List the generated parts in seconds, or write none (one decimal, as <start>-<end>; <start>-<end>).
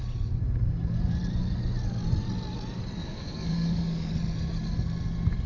3.0-4.1